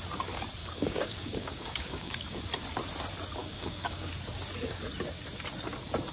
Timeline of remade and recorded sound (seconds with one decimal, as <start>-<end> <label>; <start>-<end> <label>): 0.0-0.6 recorded; 0.6-2.4 remade; 2.4-3.4 recorded; 3.4-4.1 remade; 4.1-6.1 recorded